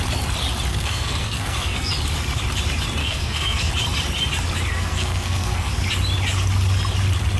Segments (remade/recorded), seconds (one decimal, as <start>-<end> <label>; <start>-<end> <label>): 0.0-0.7 recorded; 0.7-1.9 remade; 1.9-3.0 recorded; 3.0-3.7 remade; 3.7-4.7 recorded; 4.7-5.7 remade; 5.7-7.4 recorded